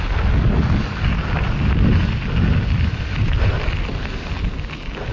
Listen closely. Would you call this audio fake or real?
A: real